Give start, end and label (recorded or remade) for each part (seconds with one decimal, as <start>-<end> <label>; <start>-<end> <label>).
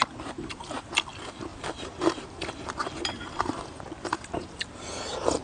0.0-0.9 remade; 0.9-1.5 recorded; 1.5-4.7 remade; 4.7-5.4 recorded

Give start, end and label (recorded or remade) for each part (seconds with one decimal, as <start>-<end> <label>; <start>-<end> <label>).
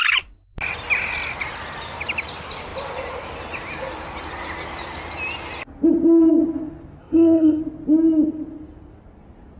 0.0-7.0 recorded; 7.0-7.6 remade; 7.6-9.6 recorded